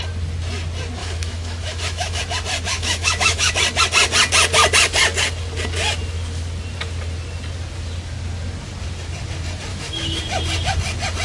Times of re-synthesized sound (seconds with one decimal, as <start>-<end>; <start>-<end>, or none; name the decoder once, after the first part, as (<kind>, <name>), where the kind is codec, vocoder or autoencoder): 1.0-2.2 (autoencoder, DAC-VAE); 2.7-3.5; 9.7-10.2